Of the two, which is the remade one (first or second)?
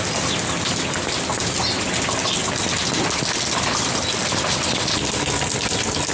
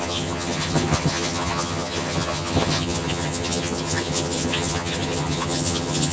second